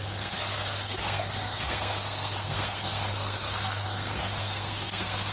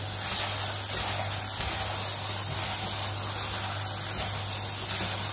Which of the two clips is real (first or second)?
second